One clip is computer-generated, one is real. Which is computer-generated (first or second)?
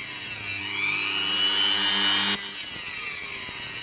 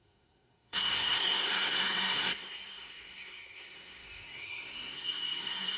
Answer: second